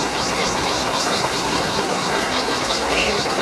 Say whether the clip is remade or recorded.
remade